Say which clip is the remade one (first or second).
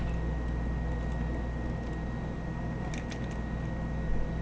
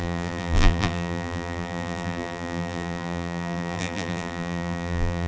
second